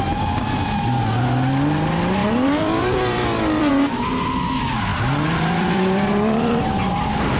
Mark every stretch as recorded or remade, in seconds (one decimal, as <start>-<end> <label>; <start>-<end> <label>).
0.0-2.2 recorded; 2.2-3.7 remade; 3.7-4.9 recorded; 4.9-6.6 remade; 6.6-7.4 recorded